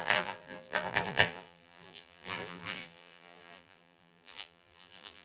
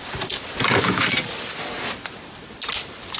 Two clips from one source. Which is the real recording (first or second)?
second